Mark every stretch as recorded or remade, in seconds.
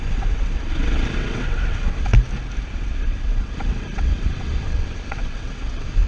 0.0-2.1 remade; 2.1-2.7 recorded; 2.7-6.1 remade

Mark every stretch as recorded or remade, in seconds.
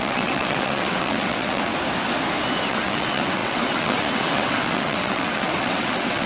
0.0-1.7 remade; 1.7-2.7 recorded; 2.7-6.3 remade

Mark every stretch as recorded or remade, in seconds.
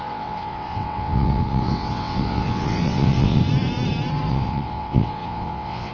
0.0-3.4 remade; 3.4-4.3 recorded; 4.3-5.9 remade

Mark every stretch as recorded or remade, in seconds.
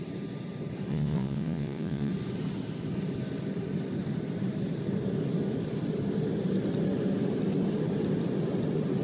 0.0-0.9 recorded; 0.9-2.1 remade; 2.1-9.0 recorded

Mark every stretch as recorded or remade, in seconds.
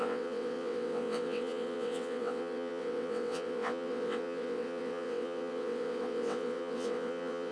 0.0-7.5 remade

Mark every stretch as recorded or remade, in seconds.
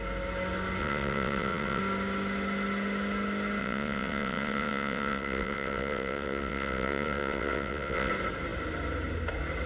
0.0-0.8 recorded; 0.8-1.8 remade; 1.8-3.6 recorded; 3.6-8.1 remade; 8.1-9.7 recorded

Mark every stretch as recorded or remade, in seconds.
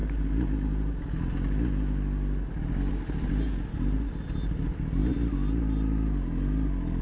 0.0-7.0 recorded